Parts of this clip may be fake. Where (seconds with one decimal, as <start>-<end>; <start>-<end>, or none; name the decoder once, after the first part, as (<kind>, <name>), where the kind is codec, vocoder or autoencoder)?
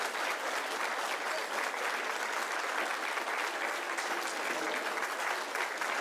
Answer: none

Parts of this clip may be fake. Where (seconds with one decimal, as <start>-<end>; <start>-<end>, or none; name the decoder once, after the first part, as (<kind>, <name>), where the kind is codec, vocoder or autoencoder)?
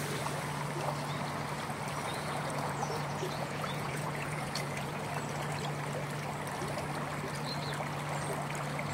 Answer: 2.1-5.0 (vocoder, Vocos)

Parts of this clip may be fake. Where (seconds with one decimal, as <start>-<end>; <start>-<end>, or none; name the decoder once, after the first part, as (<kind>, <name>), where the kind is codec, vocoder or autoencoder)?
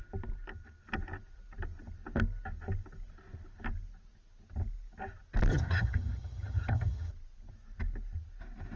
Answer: 5.5-7.1 (vocoder, HiFi-GAN)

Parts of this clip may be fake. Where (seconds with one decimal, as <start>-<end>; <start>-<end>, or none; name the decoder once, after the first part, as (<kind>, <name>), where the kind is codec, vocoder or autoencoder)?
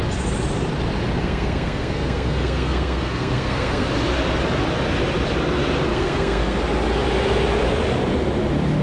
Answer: 1.2-3.9 (codec, SNAC); 5.9-6.6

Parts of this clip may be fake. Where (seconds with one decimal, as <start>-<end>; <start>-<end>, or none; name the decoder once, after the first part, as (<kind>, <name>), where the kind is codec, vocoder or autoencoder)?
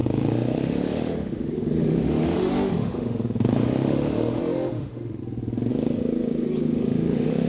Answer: 0.0-5.2 (autoencoder, DAC-VAE); 5.7-7.5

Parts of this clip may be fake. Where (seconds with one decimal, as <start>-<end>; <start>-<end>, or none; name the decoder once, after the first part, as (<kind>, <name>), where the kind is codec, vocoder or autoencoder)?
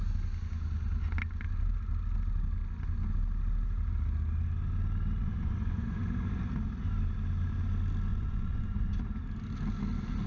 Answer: 5.2-6.4 (vocoder, Vocos); 8.1-9.0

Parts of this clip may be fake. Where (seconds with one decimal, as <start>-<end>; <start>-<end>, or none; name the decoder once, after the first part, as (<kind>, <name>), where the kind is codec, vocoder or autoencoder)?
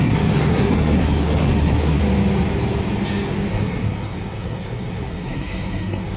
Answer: 0.0-2.0 (codec, SNAC); 3.5-6.2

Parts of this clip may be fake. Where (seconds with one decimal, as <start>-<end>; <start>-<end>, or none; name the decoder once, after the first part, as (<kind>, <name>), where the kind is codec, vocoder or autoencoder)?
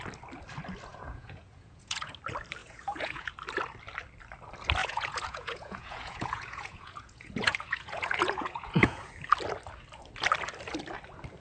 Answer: 0.9-2.1 (vocoder, Vocos); 2.6-3.3; 4.8-9.1